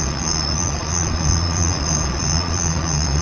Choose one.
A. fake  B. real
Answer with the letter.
A